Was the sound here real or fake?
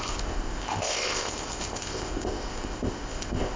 fake